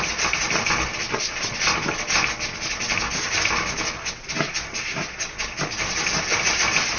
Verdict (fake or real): real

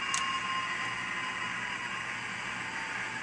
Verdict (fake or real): real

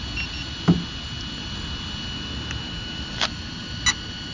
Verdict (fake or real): real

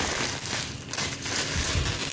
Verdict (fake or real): real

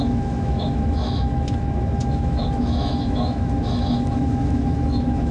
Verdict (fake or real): fake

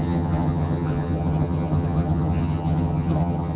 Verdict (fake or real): fake